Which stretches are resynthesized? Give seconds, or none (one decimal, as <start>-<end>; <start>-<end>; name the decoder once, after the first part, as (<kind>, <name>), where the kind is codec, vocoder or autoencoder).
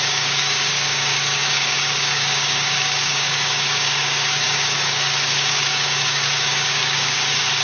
0.0-7.6 (codec, DAC)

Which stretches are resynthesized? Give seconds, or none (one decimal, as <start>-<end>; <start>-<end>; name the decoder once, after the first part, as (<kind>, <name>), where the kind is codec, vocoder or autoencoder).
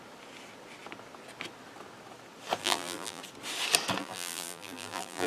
2.6-3.2 (vocoder, BigVGAN v2); 4.0-5.3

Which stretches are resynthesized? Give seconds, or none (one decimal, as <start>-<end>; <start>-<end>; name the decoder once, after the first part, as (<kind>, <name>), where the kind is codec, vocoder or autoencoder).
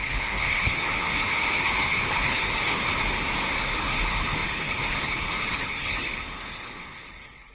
0.0-2.8 (codec, HILCodec); 3.6-7.5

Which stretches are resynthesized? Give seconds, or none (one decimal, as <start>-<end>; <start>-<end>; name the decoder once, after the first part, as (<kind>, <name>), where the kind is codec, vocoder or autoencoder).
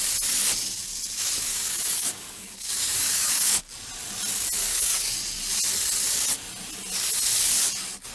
1.5-3.6 (codec, DAC); 4.6-5.1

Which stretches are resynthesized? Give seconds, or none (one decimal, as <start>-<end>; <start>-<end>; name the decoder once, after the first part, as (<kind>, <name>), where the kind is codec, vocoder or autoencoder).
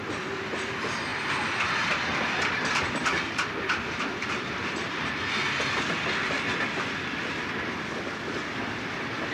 1.1-5.3 (vocoder, BigVGAN v2)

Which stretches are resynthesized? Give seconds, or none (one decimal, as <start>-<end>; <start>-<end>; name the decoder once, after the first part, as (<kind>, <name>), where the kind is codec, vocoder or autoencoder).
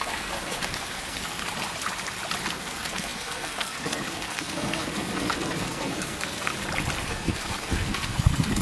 0.0-1.4 (codec, SNAC); 2.5-6.5; 7.1-8.6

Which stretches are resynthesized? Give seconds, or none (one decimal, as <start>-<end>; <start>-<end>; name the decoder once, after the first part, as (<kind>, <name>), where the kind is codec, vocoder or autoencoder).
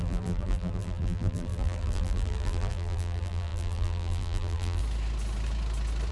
0.0-4.8 (vocoder, BigVGAN v2)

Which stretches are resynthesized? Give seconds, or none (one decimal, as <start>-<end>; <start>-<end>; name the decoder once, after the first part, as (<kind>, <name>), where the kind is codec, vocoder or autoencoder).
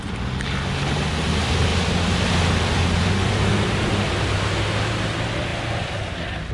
none